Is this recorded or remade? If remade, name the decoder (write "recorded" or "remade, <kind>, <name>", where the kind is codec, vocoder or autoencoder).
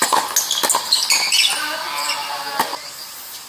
recorded